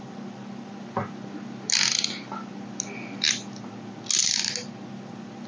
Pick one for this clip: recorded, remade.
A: recorded